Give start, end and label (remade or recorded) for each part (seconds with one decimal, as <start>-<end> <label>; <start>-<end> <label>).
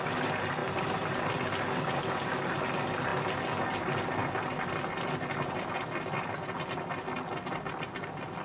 0.0-0.6 recorded; 0.6-1.2 remade; 1.2-8.4 recorded